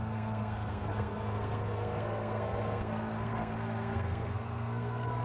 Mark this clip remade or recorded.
remade